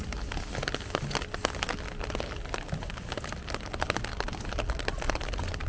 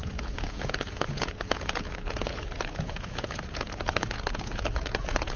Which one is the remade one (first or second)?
second